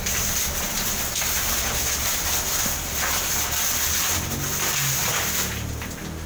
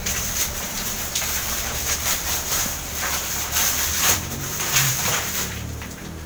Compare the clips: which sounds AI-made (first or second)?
second